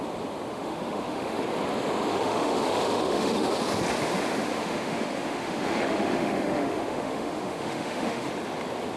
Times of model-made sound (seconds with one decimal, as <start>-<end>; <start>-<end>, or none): 0.5-1.4; 2.1-3.5; 4.5-8.3